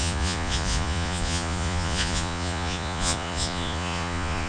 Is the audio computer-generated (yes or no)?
yes